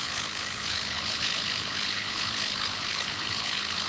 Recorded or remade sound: remade